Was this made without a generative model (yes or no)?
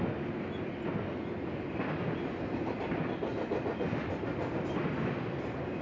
yes